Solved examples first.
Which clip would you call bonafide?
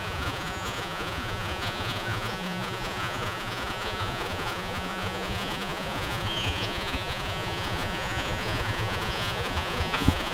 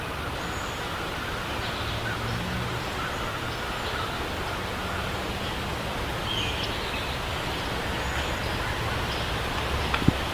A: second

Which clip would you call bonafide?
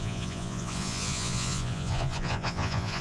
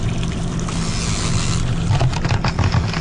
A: second